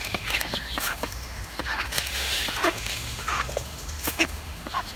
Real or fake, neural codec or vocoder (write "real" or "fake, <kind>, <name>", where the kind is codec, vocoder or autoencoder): fake, autoencoder, DAC-VAE